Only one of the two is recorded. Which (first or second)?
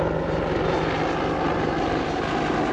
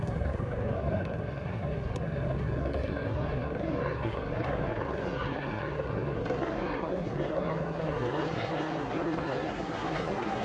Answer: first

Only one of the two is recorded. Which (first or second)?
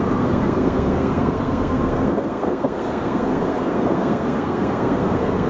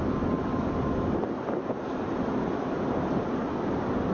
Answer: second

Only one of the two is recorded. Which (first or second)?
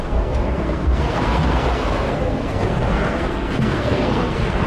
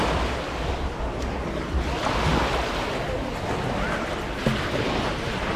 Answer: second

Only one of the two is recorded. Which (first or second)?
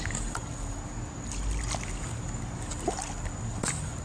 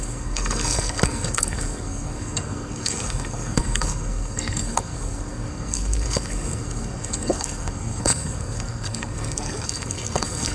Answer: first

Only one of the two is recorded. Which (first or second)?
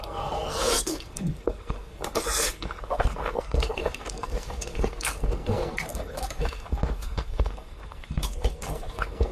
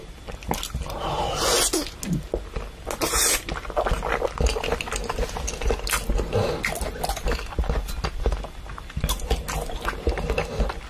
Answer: second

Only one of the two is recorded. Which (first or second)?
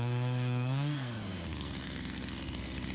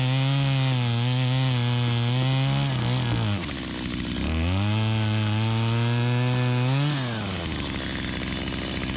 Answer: second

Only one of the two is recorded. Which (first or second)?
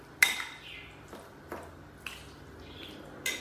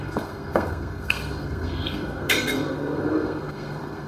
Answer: first